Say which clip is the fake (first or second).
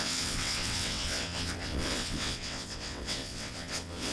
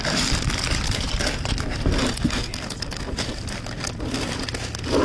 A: first